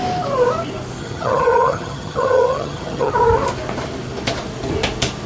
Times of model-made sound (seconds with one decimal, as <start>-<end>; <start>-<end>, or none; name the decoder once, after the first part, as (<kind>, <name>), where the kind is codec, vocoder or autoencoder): 1.0-3.1 (vocoder, HiFi-GAN)